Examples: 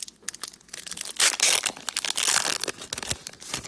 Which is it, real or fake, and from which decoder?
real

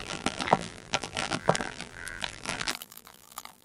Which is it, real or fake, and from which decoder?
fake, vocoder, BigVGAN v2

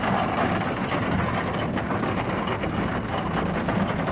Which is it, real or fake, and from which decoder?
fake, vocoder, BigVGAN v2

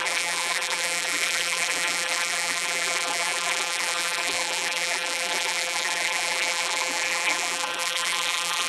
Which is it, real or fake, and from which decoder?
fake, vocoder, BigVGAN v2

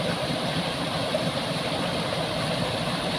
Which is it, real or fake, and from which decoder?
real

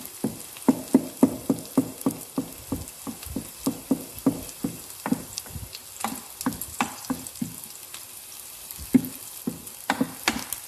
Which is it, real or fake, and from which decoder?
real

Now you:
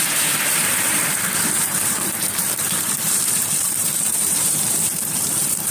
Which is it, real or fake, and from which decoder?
fake, vocoder, BigVGAN v2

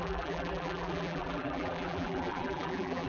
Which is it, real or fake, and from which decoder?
fake, vocoder, BigVGAN v2